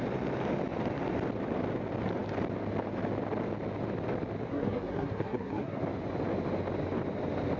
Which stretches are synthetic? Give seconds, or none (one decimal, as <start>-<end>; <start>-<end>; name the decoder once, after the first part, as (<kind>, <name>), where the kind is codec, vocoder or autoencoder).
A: 4.5-5.8 (codec, SNAC)